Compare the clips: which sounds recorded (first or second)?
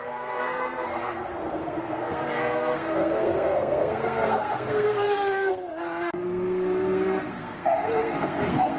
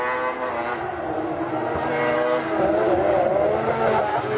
second